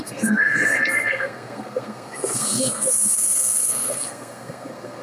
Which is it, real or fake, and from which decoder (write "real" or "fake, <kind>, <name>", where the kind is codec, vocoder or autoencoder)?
fake, codec, SNAC